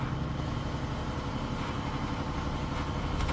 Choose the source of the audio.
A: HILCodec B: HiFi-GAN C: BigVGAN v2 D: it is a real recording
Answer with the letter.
D